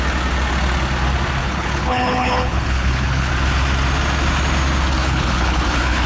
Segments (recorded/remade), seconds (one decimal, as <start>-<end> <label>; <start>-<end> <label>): 0.0-1.4 recorded; 1.4-3.3 remade; 3.3-5.0 recorded; 5.0-6.1 remade